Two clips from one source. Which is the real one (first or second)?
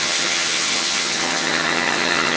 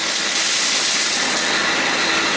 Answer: second